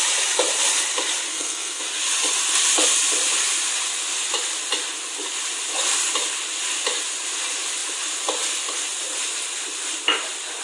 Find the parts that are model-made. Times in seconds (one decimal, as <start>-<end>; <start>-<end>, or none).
1.3-1.8